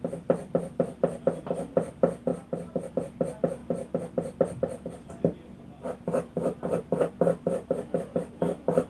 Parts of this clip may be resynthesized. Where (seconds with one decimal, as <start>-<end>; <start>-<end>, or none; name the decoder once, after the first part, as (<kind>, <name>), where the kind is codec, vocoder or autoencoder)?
none